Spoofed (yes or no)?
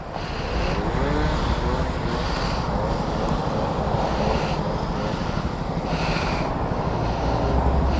no